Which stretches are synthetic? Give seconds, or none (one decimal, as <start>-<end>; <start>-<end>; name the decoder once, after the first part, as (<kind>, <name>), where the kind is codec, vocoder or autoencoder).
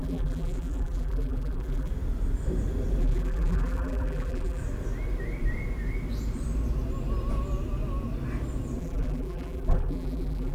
0.0-1.9 (vocoder, BigVGAN v2); 3.0-4.6; 8.8-10.5